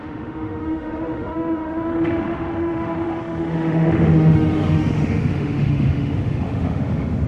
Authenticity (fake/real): fake